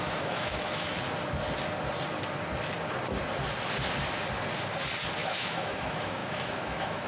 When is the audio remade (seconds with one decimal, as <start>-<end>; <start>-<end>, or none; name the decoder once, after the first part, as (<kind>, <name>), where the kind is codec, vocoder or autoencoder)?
0.0-0.9 (autoencoder, DAC-VAE); 5.2-7.1